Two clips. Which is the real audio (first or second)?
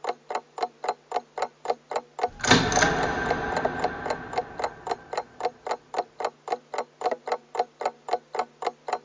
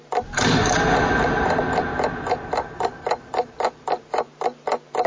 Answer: first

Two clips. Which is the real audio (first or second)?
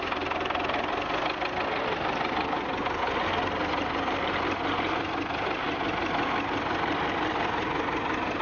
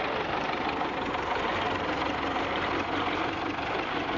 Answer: first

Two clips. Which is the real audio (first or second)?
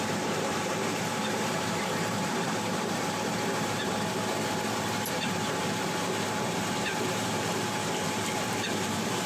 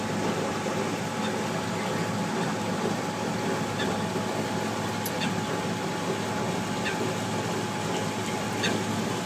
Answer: second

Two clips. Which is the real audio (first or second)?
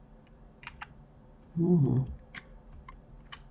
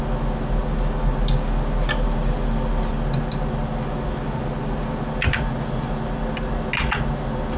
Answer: second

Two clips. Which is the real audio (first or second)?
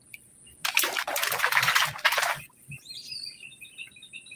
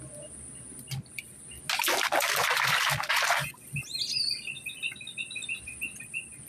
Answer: second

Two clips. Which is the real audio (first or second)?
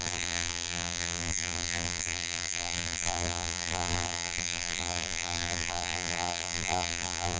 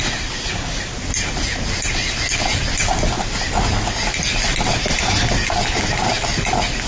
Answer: second